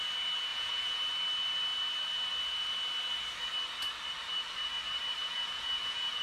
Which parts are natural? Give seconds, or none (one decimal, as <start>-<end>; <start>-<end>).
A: 0.0-0.5; 1.0-5.2